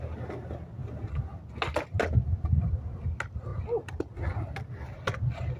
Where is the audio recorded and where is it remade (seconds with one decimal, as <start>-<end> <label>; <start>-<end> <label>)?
0.0-5.6 recorded